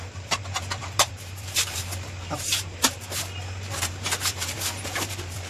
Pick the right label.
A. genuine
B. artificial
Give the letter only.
B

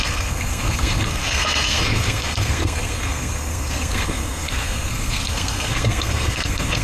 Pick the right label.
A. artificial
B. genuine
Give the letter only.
A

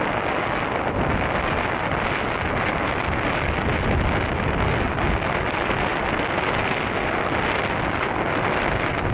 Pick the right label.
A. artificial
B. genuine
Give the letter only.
B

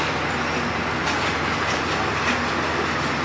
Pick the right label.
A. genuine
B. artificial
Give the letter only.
A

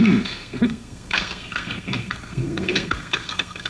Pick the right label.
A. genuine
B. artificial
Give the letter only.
B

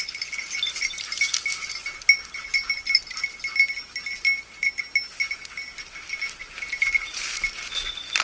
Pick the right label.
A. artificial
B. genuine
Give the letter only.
B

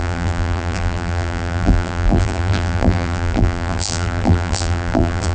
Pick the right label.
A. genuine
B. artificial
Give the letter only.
B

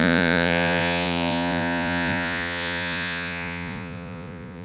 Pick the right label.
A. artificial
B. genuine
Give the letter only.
A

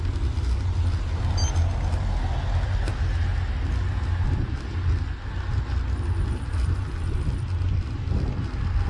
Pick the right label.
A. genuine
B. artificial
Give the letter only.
A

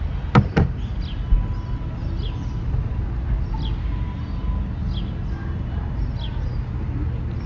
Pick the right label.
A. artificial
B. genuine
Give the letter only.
B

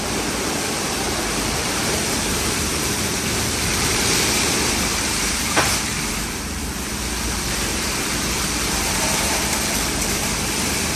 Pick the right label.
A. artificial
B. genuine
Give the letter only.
A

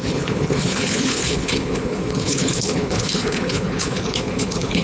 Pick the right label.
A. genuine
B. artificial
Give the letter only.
B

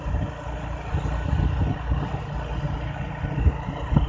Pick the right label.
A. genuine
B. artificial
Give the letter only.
A